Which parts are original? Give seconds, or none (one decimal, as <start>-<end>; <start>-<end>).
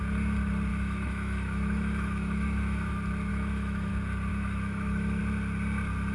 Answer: 0.0-0.7; 2.9-3.3; 3.9-4.3; 5.2-6.1